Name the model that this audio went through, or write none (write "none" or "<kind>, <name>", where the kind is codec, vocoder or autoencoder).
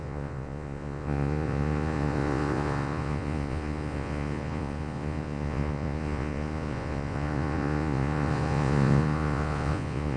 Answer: vocoder, Vocos